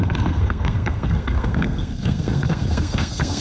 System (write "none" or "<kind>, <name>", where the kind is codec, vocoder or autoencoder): codec, SNAC